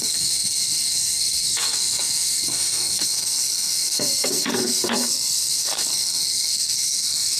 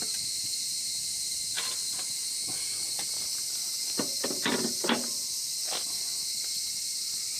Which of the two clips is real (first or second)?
second